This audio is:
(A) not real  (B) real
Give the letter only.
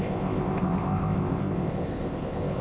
A